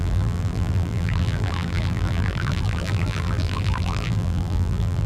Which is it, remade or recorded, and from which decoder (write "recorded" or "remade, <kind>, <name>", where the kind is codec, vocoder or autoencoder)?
remade, vocoder, BigVGAN v2